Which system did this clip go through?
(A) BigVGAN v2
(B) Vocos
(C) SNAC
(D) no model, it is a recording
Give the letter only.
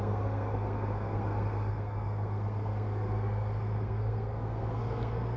C